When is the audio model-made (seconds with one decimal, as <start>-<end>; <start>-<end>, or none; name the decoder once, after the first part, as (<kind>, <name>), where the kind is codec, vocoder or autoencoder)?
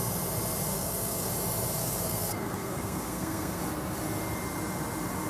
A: 0.7-1.3 (codec, SNAC); 1.8-3.6